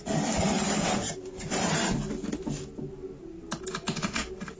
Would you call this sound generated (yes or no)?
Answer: no